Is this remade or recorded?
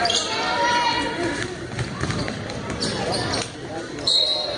remade